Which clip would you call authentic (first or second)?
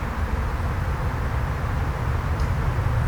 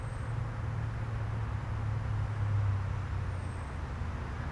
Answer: second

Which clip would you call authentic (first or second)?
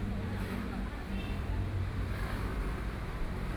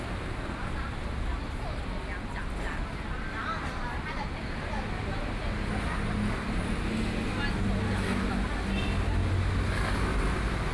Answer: second